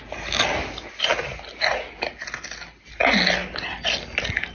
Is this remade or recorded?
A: recorded